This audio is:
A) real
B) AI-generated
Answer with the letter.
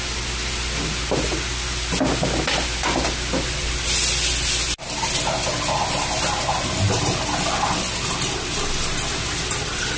A